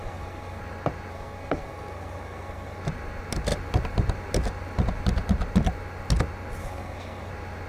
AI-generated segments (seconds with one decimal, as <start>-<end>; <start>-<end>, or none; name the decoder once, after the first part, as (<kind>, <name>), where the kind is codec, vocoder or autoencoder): 0.0-0.6 (codec, SNAC); 1.1-2.8; 6.6-7.3